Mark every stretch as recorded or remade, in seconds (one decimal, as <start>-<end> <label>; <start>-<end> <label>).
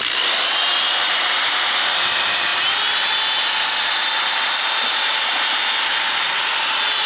0.0-7.1 recorded